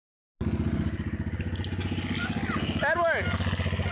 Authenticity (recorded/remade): recorded